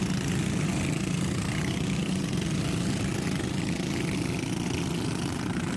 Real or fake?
real